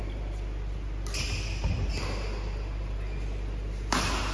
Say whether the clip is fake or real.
real